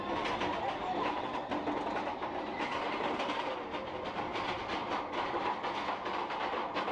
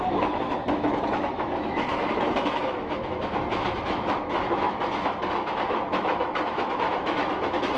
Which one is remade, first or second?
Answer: second